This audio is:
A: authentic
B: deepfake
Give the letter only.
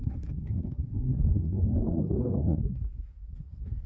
B